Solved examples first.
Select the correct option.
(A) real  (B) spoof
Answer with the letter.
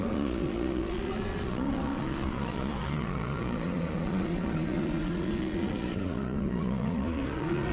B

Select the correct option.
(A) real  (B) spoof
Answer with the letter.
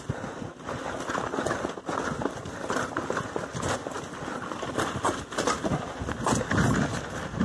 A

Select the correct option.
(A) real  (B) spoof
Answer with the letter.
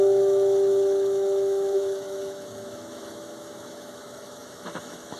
B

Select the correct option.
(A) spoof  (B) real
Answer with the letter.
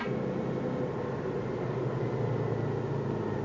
B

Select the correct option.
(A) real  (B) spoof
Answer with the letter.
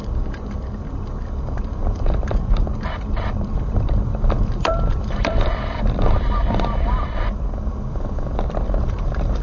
B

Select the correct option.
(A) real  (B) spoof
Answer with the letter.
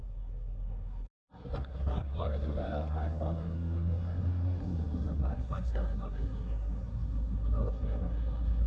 B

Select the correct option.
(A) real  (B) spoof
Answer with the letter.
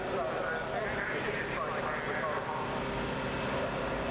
A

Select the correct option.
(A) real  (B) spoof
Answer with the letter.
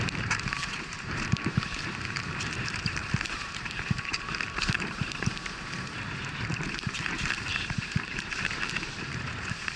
B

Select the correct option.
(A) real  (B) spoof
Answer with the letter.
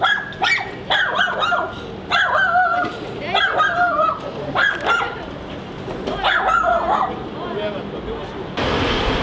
A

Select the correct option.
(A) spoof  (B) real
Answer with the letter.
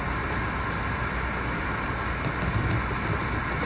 B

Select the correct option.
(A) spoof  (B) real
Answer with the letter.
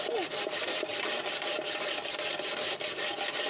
B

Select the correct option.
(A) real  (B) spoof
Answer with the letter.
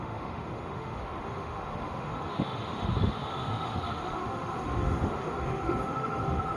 B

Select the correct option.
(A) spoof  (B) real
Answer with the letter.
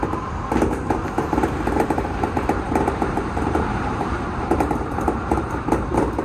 A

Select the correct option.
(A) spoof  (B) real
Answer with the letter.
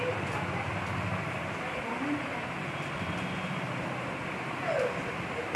B